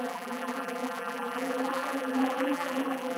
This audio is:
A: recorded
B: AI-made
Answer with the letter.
B